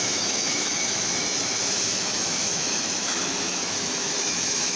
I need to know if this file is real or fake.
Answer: fake